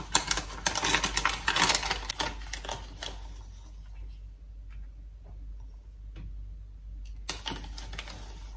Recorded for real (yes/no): yes